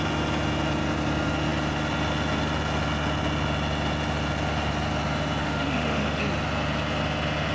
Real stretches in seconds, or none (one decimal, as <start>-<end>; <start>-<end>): 0.0-5.4; 6.2-7.5